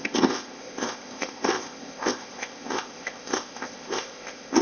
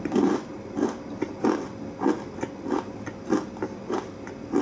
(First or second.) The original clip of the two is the second